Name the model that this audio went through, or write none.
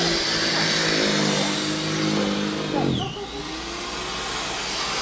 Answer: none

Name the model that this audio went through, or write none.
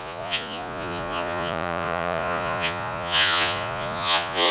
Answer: vocoder, Vocos